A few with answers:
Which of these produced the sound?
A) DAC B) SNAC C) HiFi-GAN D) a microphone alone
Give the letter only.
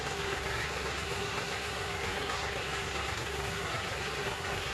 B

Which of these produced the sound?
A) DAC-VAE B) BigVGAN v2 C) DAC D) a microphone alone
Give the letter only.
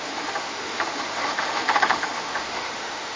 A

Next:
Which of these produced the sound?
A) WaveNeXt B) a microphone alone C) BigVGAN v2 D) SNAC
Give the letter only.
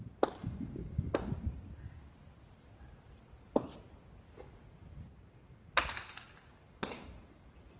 B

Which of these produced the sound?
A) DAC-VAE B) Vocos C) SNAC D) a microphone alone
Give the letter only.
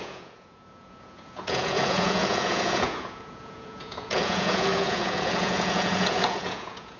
B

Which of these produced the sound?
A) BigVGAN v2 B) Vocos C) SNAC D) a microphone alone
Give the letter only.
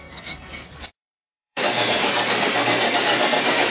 C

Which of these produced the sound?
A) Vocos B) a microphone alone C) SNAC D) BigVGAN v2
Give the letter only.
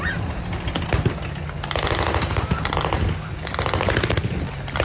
B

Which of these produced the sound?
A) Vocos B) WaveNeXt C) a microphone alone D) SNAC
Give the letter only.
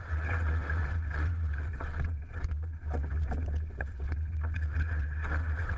B